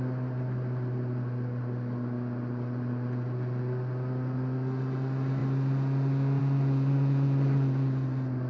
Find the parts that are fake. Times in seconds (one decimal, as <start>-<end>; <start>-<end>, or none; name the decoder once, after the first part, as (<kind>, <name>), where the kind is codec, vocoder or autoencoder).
none

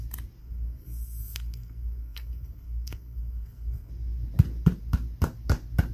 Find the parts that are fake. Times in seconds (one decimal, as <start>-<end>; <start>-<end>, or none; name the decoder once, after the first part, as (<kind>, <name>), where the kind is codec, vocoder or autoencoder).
0.4-3.9 (codec, SNAC)

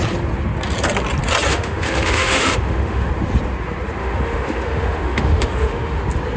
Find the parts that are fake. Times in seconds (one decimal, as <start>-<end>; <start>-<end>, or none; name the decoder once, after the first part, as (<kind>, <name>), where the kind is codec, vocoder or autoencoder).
1.5-3.1 (autoencoder, DAC-VAE); 4.0-6.0

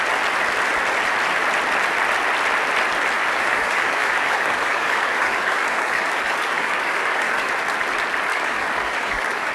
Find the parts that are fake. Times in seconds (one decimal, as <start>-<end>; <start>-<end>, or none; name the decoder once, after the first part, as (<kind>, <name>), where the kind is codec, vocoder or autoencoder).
3.2-7.5 (codec, DAC); 8.3-9.5

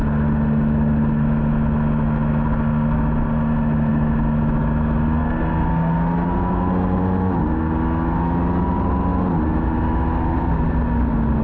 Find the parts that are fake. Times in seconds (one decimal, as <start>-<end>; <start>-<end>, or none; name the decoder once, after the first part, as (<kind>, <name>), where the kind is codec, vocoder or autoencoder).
none

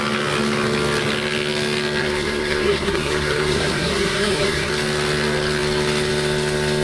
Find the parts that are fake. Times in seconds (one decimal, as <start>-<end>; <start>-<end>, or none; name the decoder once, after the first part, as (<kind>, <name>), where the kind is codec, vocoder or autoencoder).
2.0-4.7 (codec, SNAC)